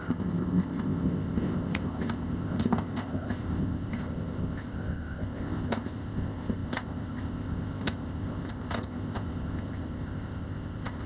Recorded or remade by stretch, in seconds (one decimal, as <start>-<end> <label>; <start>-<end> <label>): 0.0-11.1 remade